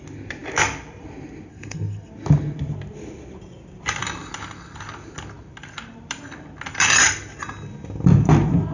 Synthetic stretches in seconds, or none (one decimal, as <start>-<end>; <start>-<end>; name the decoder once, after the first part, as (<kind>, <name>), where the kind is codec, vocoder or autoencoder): 1.5-2.1 (codec, SNAC)